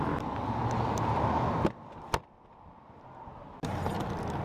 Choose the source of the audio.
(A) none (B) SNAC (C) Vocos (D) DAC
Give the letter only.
A